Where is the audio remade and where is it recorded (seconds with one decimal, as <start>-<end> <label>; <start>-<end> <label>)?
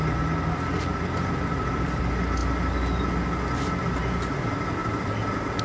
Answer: 0.0-0.9 recorded; 0.9-2.0 remade; 2.0-4.8 recorded; 4.8-5.6 remade